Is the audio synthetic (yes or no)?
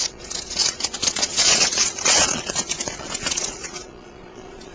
yes